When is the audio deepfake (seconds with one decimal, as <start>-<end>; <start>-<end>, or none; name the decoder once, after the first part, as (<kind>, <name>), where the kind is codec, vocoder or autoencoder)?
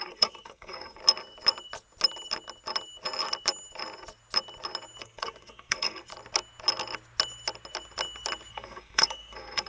0.0-1.0 (codec, SNAC); 5.0-6.1; 8.5-9.7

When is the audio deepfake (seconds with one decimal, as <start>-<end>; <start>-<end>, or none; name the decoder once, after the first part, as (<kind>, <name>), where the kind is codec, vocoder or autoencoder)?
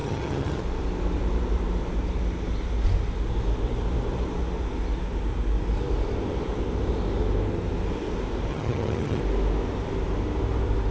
0.0-0.6 (vocoder, HiFi-GAN); 8.5-9.2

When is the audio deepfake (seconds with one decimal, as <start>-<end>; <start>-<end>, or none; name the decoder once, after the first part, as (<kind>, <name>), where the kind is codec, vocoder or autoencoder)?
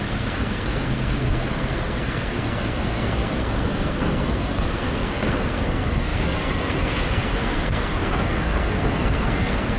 0.0-9.8 (codec, SNAC)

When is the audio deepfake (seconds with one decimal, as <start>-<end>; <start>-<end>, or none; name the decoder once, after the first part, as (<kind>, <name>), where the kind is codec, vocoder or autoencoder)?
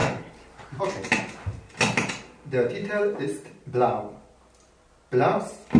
0.0-0.9 (vocoder, BigVGAN v2)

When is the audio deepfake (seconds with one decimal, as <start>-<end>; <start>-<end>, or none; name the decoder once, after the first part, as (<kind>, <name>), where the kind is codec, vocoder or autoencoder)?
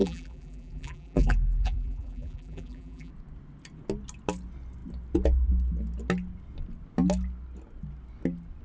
0.0-3.1 (vocoder, BigVGAN v2)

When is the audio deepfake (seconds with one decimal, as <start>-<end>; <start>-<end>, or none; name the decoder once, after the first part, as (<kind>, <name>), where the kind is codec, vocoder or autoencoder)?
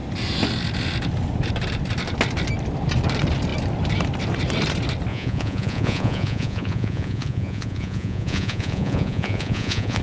5.1-10.0 (vocoder, Vocos)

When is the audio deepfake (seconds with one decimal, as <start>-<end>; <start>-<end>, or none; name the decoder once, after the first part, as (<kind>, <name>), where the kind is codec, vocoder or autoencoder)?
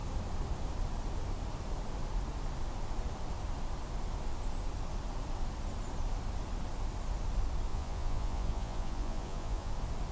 7.7-9.7 (vocoder, Vocos)